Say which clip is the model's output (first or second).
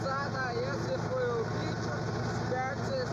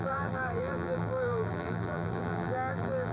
second